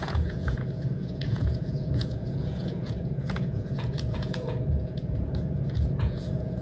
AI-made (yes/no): yes